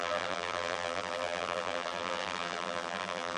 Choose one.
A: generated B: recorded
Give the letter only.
A